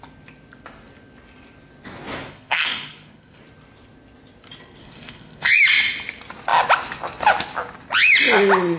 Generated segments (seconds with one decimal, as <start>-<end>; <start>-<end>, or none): 2.3-3.4; 4.8-5.5